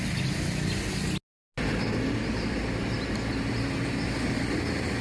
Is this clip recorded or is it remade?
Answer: recorded